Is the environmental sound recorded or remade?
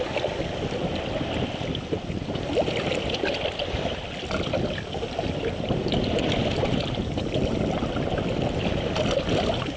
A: recorded